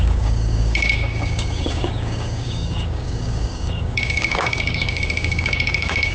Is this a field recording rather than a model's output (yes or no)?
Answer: no